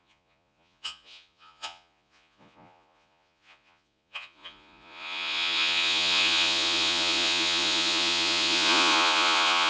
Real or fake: fake